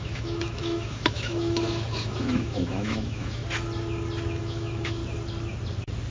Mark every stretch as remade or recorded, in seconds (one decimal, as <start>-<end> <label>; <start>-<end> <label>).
0.0-3.4 remade; 3.4-4.4 recorded; 4.4-5.0 remade; 5.0-6.1 recorded